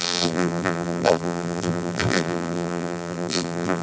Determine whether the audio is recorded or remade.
remade